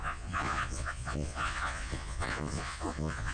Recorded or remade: remade